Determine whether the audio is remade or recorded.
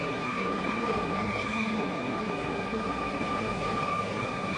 remade